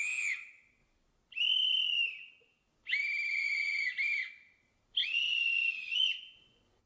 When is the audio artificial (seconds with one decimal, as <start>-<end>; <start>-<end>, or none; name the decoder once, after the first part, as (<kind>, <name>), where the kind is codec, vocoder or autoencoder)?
5.0-6.9 (vocoder, Vocos)